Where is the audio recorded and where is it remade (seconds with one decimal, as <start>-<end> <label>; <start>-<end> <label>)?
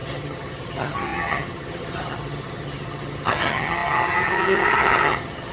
0.0-5.5 remade